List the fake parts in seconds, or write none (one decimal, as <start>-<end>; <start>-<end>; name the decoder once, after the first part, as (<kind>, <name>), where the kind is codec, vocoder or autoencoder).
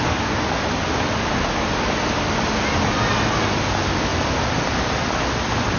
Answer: none